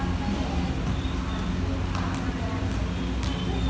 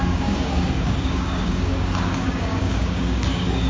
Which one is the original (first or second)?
first